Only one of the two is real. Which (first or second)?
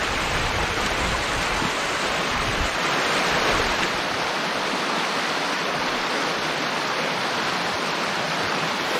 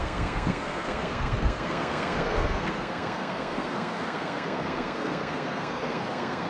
first